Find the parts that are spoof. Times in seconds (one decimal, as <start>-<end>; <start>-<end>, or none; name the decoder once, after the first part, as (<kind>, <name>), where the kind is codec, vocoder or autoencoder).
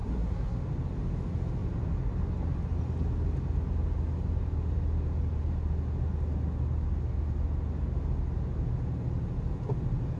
0.0-0.6 (codec, SNAC)